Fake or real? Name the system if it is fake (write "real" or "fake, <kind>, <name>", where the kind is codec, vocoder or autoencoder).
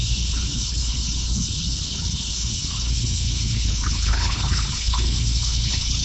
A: fake, codec, HILCodec